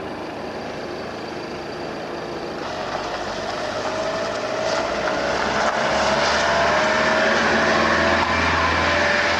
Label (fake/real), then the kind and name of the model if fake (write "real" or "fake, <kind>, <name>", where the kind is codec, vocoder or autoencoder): real